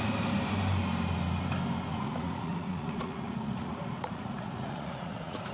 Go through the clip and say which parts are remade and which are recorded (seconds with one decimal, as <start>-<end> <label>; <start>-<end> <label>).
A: 0.0-1.9 recorded; 1.9-5.5 remade